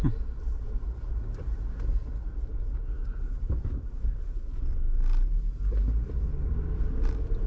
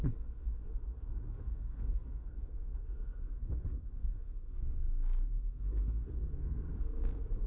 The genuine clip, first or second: first